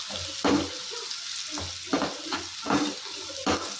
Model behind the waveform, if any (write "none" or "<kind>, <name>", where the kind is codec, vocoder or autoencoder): none